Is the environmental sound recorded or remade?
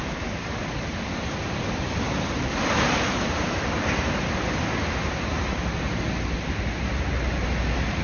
recorded